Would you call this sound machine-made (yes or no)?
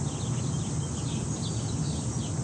no